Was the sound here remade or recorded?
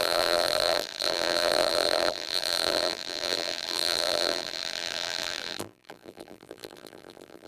remade